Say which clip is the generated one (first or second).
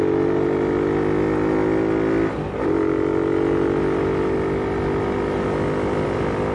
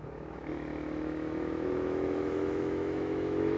second